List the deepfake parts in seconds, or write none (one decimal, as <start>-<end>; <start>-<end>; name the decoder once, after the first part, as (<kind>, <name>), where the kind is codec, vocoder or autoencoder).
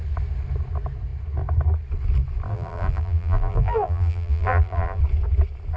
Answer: 2.5-5.0 (vocoder, BigVGAN v2)